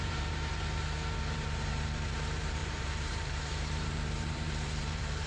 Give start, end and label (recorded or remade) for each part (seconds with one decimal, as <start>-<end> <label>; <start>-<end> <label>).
0.0-0.5 remade; 0.5-1.2 recorded; 1.2-5.3 remade